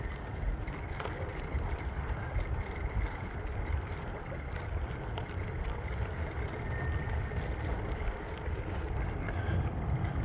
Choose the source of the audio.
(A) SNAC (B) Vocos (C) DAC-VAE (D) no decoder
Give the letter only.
D